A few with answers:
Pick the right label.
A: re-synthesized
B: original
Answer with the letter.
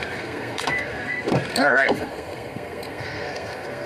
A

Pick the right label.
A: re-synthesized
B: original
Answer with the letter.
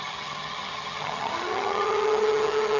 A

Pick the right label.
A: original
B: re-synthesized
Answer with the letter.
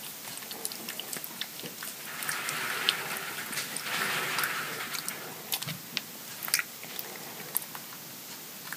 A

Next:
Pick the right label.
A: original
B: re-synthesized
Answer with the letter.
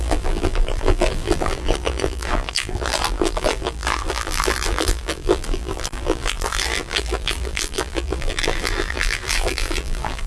B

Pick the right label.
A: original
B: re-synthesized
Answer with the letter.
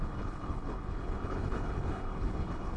B